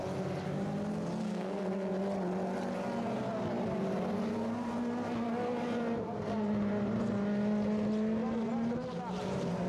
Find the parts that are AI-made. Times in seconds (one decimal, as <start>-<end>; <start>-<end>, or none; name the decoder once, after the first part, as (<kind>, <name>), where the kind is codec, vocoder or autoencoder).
1.2-1.9 (codec, SNAC)